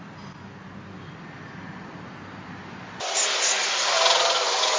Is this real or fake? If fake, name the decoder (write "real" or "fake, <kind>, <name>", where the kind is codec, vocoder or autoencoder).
real